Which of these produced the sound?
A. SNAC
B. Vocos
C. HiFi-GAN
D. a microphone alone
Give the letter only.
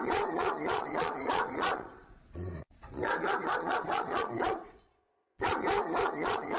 B